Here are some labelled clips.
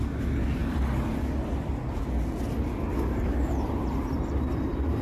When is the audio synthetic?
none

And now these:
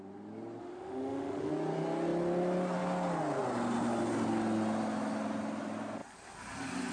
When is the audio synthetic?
0.6-1.5 (autoencoder, DAC-VAE)